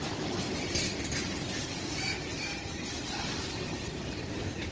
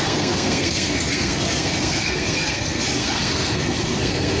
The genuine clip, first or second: first